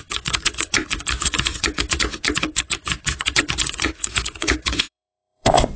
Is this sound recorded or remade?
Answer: remade